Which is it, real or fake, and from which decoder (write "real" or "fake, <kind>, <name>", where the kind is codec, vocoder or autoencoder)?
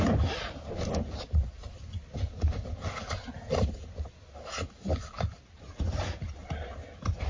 real